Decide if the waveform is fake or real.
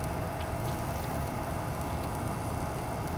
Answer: real